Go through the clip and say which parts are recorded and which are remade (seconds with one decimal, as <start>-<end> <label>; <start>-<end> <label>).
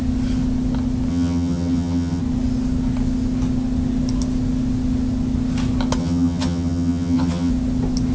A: 0.0-1.1 recorded; 1.1-2.2 remade; 2.2-6.0 recorded; 6.0-7.5 remade; 7.5-8.1 recorded